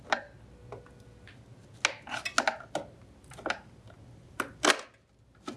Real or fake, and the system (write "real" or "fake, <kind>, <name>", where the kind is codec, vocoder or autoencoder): real